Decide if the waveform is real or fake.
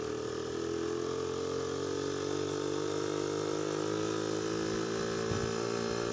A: real